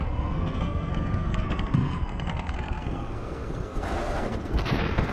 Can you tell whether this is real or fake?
fake